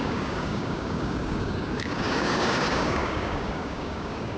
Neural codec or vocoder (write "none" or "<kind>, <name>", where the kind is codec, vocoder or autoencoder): codec, DAC